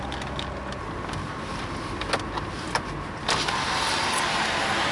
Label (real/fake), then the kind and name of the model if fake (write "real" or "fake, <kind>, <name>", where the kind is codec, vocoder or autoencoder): real